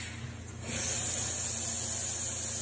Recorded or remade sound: recorded